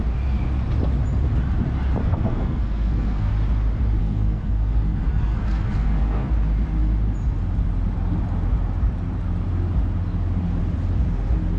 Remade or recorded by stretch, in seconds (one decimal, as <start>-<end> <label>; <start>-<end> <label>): 0.0-2.0 recorded; 2.0-3.3 remade; 3.3-4.0 recorded; 4.0-6.3 remade; 6.3-11.6 recorded